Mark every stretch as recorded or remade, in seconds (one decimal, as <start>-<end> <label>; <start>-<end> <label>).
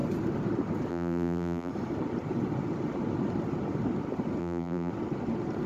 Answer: 0.0-0.9 recorded; 0.9-1.7 remade; 1.7-4.4 recorded; 4.4-4.9 remade; 4.9-5.7 recorded